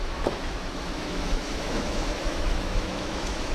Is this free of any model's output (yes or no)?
no